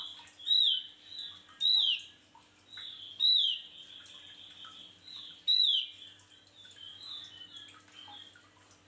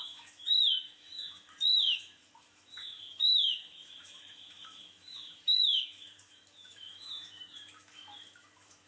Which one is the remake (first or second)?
second